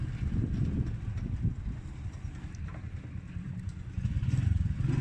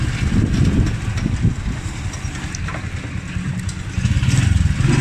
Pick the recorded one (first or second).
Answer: second